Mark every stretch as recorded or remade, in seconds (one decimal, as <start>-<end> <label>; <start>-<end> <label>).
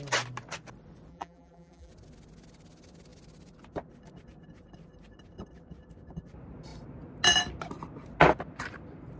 0.0-1.1 recorded; 1.1-1.9 remade; 1.9-9.2 recorded